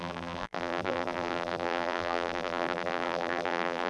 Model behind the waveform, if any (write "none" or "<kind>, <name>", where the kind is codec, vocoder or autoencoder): vocoder, BigVGAN v2